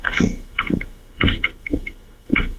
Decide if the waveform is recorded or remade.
remade